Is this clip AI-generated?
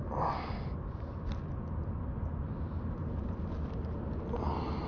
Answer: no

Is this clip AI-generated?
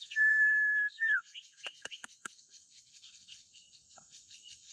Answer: yes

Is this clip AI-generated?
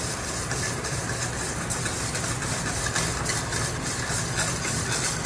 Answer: no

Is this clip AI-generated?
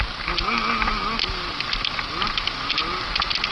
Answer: no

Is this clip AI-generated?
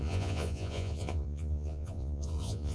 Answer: yes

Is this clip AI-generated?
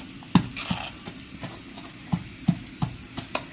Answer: no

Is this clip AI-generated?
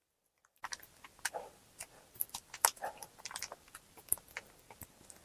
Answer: no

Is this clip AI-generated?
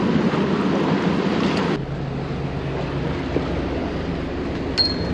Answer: no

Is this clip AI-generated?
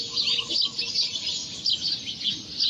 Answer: no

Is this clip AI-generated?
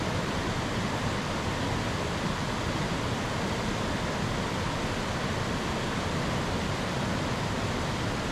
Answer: no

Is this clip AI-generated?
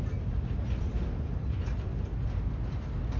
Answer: no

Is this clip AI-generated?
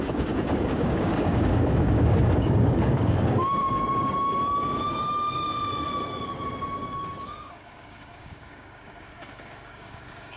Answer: yes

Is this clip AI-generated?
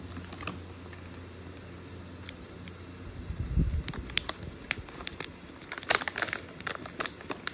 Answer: no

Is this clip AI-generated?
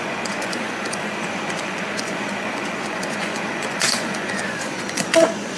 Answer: yes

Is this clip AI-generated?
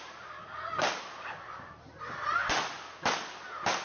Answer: no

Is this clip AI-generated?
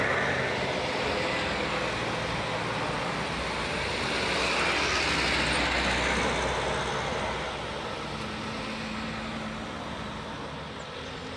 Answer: no